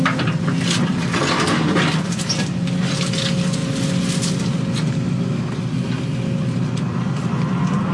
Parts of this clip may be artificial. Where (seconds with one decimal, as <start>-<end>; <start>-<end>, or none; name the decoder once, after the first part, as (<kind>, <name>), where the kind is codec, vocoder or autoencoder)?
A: none